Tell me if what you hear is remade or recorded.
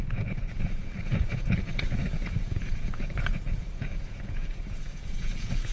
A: remade